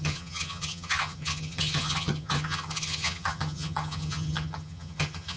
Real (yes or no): no